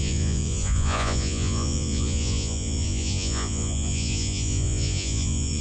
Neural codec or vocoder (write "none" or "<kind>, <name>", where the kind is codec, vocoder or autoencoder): vocoder, Vocos